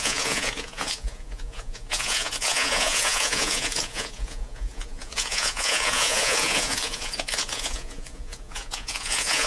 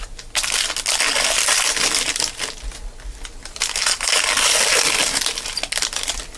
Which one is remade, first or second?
first